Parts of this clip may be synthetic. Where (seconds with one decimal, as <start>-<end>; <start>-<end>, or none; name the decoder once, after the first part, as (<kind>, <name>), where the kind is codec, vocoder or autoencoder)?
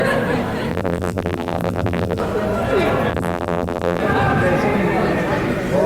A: 0.7-2.2 (vocoder, BigVGAN v2); 3.1-4.0